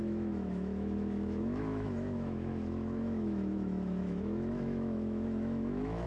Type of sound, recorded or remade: remade